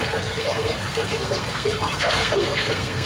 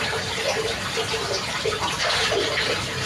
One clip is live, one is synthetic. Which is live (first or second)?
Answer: second